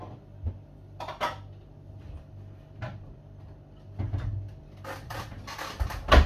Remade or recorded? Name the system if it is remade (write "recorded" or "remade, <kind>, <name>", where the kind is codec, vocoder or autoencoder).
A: recorded